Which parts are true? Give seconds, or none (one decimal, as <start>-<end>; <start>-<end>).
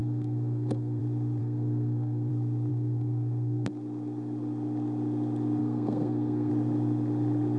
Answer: 1.0-1.4; 2.3-2.7; 3.7-5.6; 6.5-7.6